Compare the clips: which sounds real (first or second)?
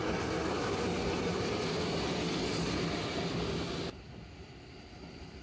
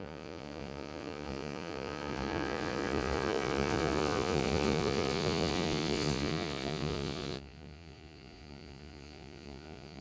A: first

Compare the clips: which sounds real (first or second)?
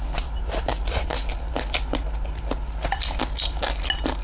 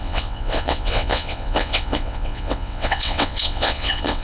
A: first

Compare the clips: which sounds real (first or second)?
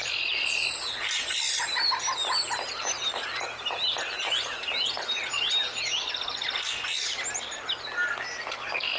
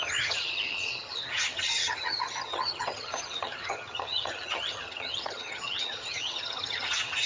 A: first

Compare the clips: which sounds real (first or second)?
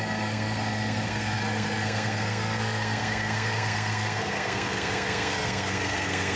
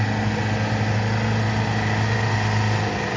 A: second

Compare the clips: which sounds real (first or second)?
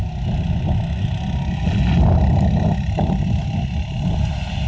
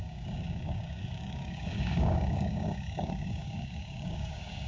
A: first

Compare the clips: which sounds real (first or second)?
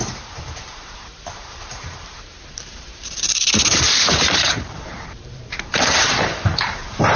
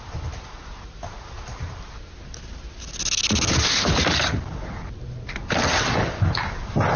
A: second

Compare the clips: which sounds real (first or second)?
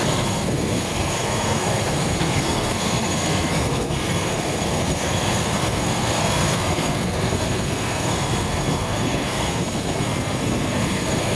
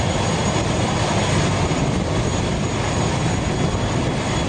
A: second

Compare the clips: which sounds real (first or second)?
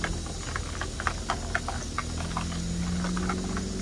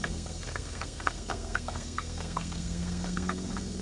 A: first